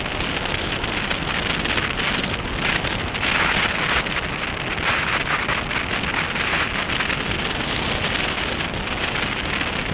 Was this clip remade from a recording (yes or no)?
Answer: no